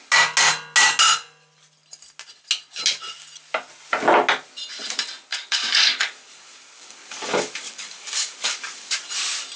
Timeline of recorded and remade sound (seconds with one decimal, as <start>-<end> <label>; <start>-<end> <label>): 0.0-5.3 recorded; 5.3-8.9 remade; 8.9-9.6 recorded